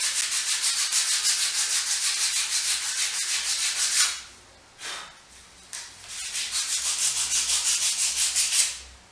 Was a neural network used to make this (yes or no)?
no